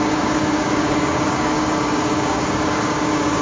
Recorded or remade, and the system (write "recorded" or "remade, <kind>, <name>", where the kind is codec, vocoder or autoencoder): remade, codec, DAC